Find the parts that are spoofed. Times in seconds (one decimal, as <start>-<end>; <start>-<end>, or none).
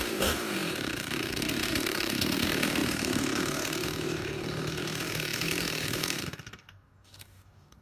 0.0-7.8